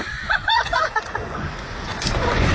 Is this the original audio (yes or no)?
no